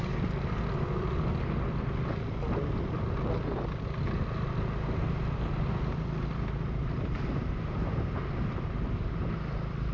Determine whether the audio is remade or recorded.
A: recorded